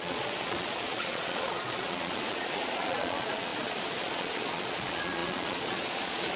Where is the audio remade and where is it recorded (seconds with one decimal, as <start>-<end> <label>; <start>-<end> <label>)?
0.0-6.4 remade